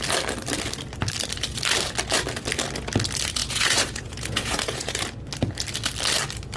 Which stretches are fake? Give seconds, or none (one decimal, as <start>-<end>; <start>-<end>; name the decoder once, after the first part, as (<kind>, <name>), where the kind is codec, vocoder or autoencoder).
3.4-4.9 (vocoder, Vocos)